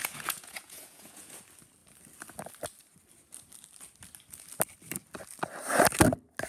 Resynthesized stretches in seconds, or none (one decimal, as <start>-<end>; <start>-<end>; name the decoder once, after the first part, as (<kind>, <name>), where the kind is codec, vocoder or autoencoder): 0.0-1.4 (vocoder, Vocos)